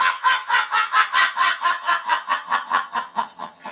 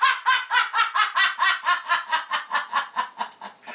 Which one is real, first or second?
second